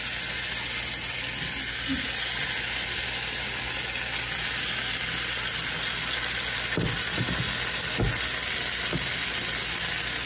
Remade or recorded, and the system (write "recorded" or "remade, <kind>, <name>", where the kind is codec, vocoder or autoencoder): recorded